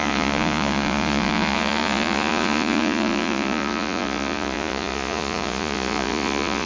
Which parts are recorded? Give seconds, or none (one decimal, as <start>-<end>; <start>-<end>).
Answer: none